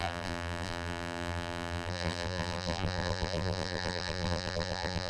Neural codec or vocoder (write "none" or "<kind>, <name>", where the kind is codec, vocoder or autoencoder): vocoder, BigVGAN v2